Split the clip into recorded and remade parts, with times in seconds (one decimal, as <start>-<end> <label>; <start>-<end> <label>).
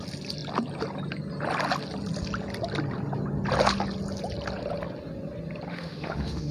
0.0-5.7 recorded; 5.7-6.5 remade